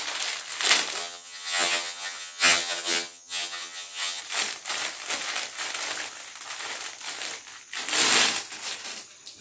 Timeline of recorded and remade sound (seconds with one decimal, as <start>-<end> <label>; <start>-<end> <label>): 0.0-1.0 recorded; 1.0-4.2 remade; 4.2-9.4 recorded